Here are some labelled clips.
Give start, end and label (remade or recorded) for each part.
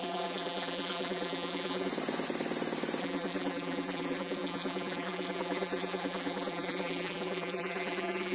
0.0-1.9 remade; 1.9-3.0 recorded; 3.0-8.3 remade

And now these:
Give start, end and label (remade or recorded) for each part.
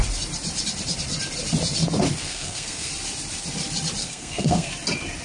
0.0-2.2 recorded; 2.2-2.9 remade; 2.9-4.0 recorded; 4.0-4.7 remade; 4.7-5.2 recorded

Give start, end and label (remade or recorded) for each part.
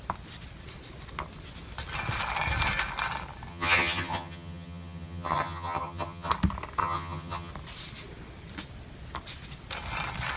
0.0-3.5 recorded; 3.5-6.3 remade; 6.3-6.8 recorded; 6.8-7.5 remade; 7.5-10.4 recorded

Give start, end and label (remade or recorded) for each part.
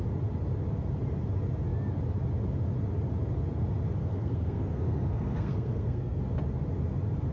0.0-4.0 recorded; 4.0-6.2 remade; 6.2-7.3 recorded